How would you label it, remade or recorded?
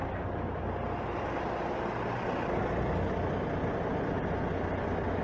recorded